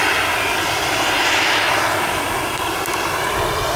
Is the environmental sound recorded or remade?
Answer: remade